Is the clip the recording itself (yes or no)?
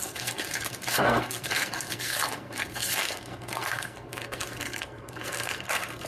no